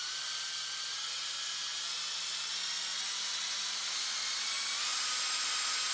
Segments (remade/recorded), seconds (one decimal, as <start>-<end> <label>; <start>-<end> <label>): 0.0-5.9 recorded